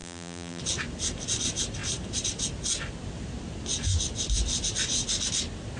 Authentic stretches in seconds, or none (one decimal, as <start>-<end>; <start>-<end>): 0.6-5.8